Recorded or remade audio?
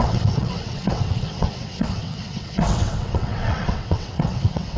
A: remade